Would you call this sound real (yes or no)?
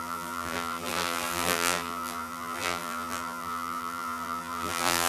no